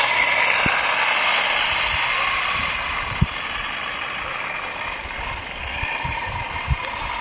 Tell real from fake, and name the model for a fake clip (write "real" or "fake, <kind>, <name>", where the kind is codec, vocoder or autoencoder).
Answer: real